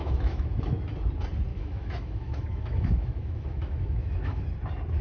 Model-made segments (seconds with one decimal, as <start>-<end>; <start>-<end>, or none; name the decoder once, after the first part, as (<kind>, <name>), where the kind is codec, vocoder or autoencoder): 0.0-0.8 (autoencoder, DAC-VAE); 1.5-4.4